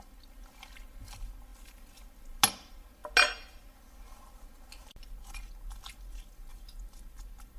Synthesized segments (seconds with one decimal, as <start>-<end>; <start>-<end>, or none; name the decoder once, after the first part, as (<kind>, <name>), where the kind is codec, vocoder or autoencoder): none